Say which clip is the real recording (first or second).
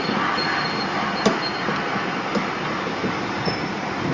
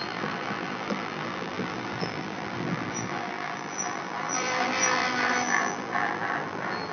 first